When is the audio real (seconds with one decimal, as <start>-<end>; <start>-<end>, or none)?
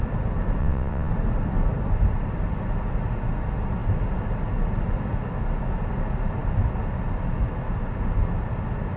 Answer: 0.0-0.6; 1.1-9.0